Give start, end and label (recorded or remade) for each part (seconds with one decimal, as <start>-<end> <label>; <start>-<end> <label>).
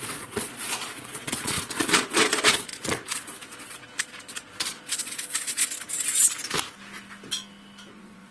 0.0-5.6 remade; 5.6-7.9 recorded; 7.9-8.3 remade